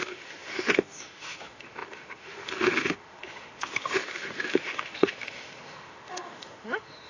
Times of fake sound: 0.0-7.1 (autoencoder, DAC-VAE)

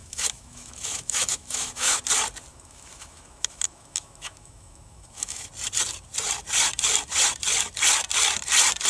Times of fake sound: 0.0-2.0 (autoencoder, DAC-VAE); 2.5-5.5

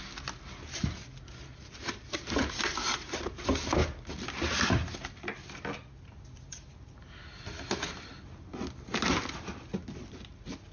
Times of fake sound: none

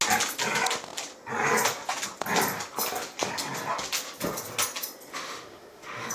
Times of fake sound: 5.1-6.1 (autoencoder, DAC-VAE)

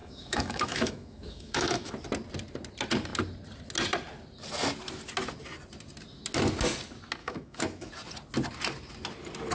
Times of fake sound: 0.0-1.9 (autoencoder, DAC-VAE); 7.2-7.9

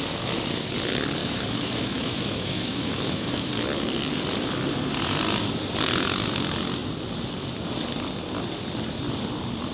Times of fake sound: 1.2-3.5 (autoencoder, DAC-VAE)

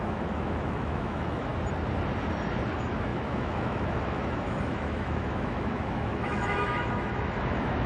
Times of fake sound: 0.0-1.5 (autoencoder, DAC-VAE); 2.7-7.9